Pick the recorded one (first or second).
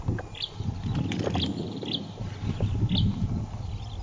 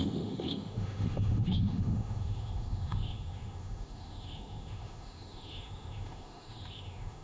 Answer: first